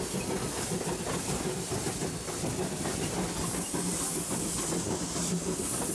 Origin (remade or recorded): recorded